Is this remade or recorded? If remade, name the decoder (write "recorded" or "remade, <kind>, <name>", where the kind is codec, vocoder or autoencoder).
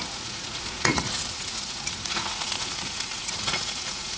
remade, vocoder, Vocos